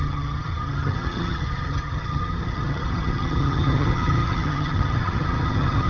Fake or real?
fake